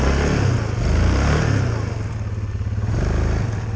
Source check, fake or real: real